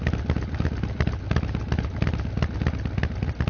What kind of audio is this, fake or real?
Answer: real